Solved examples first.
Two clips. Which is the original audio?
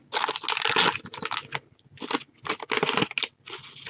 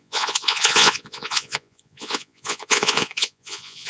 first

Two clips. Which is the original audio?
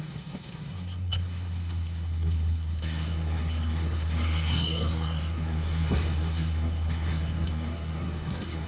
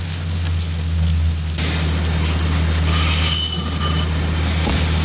second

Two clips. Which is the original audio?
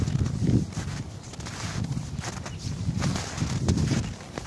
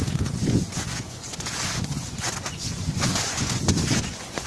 first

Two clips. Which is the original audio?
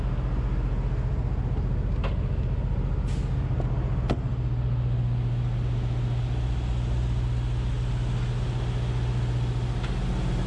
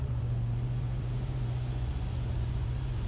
first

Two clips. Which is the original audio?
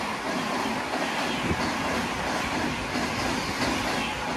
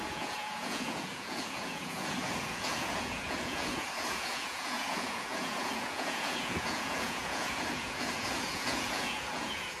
first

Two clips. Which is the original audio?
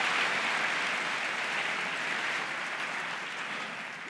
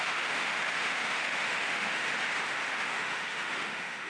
first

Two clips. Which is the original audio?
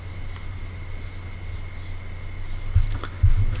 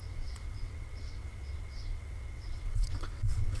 first